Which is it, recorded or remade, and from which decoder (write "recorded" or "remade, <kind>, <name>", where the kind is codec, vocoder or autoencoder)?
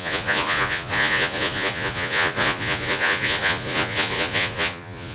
remade, vocoder, Vocos